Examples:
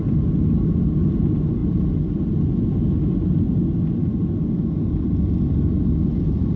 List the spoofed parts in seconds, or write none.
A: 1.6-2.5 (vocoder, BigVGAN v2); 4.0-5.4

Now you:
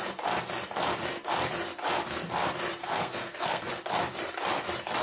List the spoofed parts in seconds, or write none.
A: 2.8-3.7 (codec, SNAC)